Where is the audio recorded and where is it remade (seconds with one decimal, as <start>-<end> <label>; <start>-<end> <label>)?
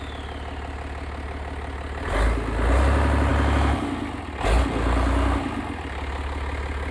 0.0-6.9 recorded